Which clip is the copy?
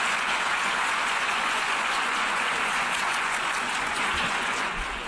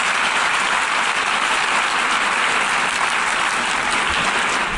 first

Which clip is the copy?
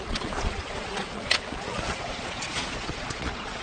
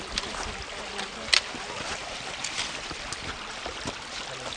first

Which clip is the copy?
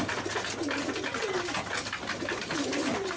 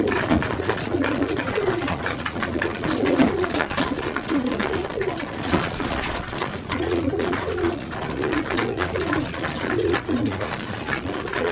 second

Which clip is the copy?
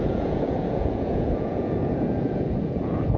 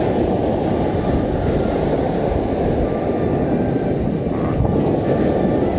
first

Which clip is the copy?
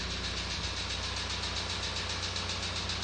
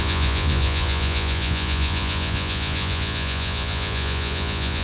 second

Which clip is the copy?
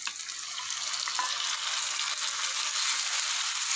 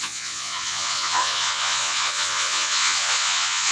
second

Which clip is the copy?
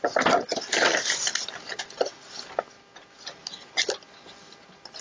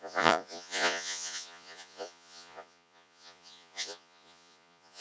second